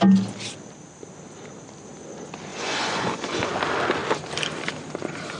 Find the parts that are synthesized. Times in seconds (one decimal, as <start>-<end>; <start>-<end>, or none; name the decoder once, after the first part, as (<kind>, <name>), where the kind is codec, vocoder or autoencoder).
2.5-3.5 (vocoder, Vocos)

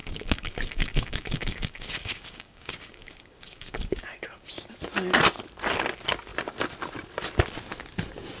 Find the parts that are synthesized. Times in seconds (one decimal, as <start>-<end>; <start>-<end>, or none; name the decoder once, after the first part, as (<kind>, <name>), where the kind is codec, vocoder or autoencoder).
0.0-4.7 (codec, DAC)